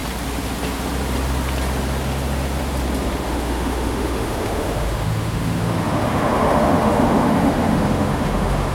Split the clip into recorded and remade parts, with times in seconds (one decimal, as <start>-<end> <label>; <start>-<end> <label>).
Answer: 0.0-3.3 recorded; 3.3-8.7 remade